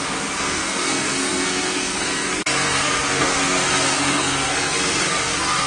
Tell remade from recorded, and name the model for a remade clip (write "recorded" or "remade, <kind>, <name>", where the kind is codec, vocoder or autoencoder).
remade, codec, SNAC